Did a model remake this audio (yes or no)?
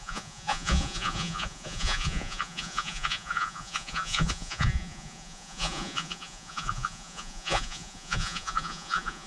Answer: yes